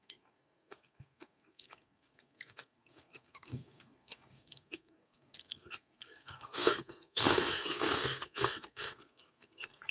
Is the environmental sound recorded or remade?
remade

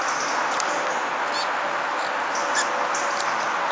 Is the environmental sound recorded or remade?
recorded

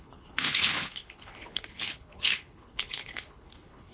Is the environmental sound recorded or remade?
remade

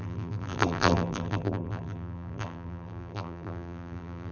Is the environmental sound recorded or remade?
remade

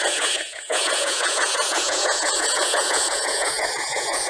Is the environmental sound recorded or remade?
remade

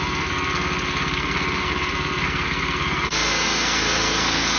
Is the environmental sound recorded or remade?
remade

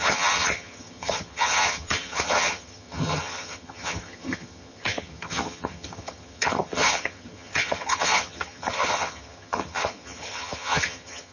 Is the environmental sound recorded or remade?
remade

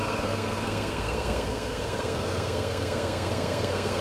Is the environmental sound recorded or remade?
remade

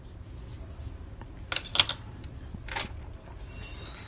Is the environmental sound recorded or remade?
recorded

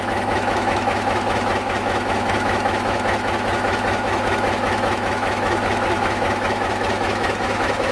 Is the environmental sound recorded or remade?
remade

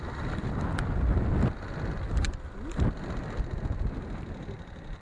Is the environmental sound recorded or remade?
recorded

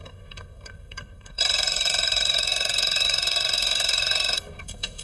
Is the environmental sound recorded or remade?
remade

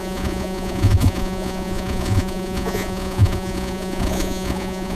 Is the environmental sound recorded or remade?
remade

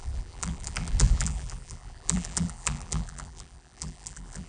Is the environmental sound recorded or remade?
remade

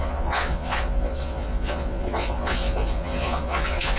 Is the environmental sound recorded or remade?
remade